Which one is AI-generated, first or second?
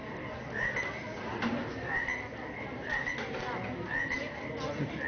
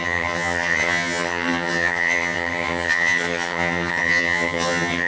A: second